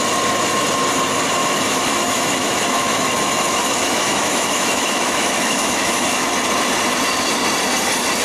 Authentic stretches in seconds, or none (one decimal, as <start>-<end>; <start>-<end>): 0.0-1.4; 6.3-8.2